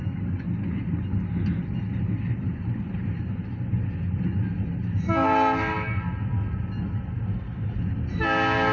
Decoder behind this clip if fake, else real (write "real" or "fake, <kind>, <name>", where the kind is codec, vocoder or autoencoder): real